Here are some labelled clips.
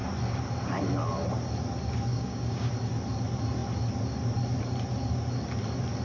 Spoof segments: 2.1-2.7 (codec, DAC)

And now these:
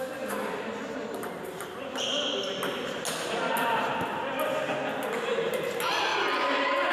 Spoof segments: none